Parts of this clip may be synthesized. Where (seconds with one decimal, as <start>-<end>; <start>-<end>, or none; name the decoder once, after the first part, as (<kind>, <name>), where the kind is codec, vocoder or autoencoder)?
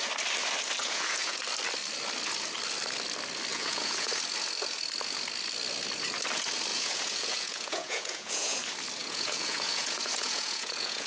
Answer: 0.8-1.4 (vocoder, Vocos); 3.5-4.1; 6.7-8.6; 9.0-11.1